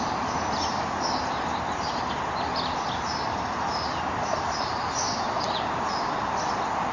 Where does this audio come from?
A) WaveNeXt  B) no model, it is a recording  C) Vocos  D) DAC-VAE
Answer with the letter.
B